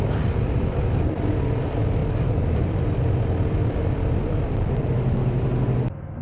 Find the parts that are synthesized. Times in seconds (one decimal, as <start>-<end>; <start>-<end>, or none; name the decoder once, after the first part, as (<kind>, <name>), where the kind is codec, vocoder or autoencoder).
2.0-4.4 (vocoder, BigVGAN v2)